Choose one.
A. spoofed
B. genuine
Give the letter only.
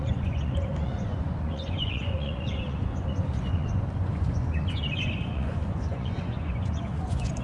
A